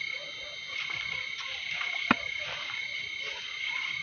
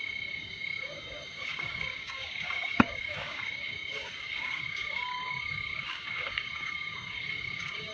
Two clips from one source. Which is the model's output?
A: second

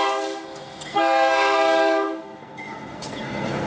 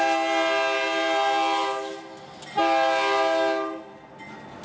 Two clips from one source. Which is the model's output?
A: first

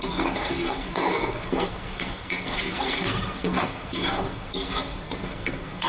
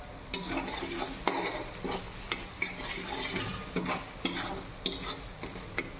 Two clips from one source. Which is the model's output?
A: first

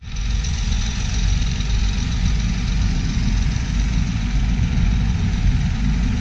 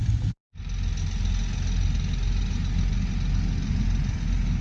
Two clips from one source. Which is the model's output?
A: first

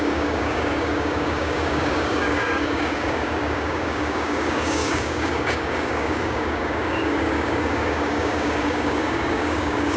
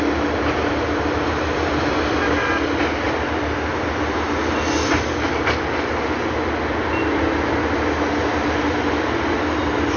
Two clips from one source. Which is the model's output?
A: first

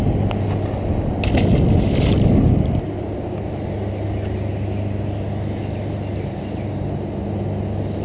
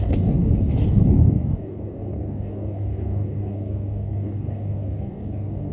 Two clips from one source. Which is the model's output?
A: second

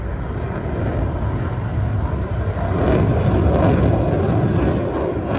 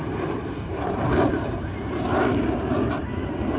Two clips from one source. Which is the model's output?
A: second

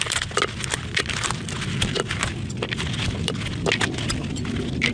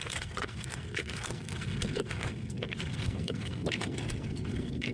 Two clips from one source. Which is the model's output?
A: second